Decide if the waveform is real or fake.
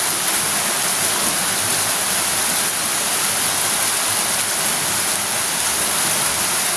real